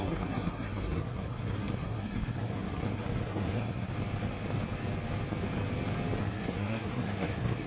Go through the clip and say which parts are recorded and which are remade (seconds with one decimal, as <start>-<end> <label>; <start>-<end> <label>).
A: 0.0-3.9 remade; 3.9-6.2 recorded; 6.2-7.7 remade